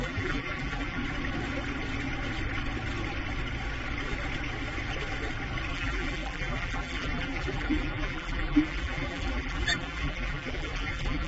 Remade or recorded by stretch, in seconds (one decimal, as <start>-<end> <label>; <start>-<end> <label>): 0.0-1.0 remade; 1.0-5.7 recorded; 5.7-11.3 remade